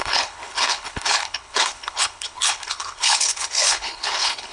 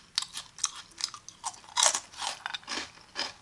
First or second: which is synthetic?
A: first